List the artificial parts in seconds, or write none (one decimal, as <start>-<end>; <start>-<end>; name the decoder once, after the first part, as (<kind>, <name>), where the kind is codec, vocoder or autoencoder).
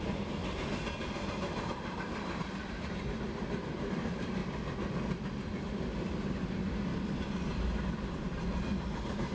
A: 0.0-0.4 (vocoder, BigVGAN v2); 1.6-4.4; 5.7-6.9; 8.1-9.3